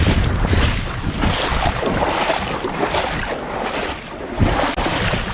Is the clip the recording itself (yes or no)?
yes